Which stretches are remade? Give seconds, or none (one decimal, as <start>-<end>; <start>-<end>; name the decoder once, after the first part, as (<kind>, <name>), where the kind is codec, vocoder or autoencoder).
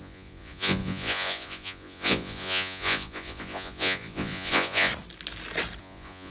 0.0-4.9 (vocoder, Vocos); 5.8-6.3